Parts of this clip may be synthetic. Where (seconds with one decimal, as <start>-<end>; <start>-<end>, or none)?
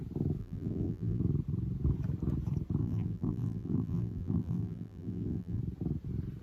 0.4-1.2; 2.8-5.6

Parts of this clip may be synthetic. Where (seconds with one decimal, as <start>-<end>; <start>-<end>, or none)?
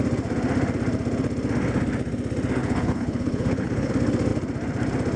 2.6-3.9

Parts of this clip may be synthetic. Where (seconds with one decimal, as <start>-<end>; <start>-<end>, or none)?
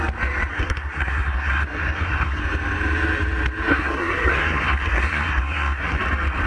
0.5-2.4; 3.7-6.0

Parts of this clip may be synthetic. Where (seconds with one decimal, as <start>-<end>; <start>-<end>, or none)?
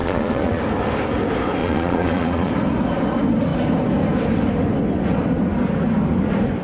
0.0-0.6; 1.6-2.5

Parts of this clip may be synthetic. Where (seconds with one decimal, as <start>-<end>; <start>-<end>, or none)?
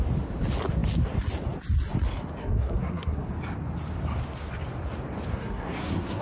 2.4-3.3; 5.3-6.2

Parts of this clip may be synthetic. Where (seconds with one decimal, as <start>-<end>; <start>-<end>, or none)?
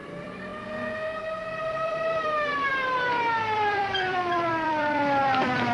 0.0-0.5; 1.5-5.7